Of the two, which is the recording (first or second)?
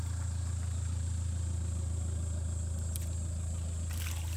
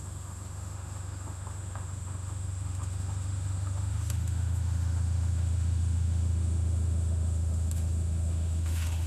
first